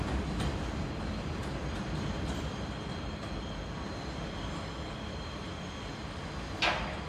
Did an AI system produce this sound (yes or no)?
no